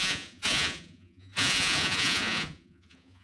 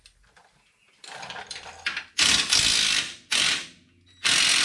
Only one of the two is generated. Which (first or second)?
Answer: first